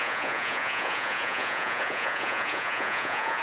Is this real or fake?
fake